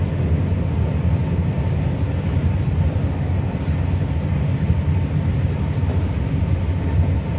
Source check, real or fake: real